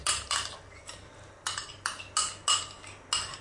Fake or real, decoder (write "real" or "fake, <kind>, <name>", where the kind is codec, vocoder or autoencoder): real